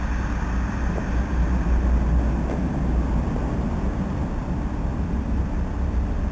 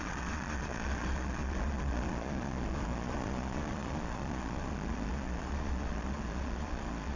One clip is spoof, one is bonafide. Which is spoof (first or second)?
second